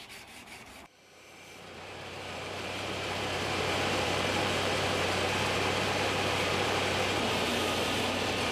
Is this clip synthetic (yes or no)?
yes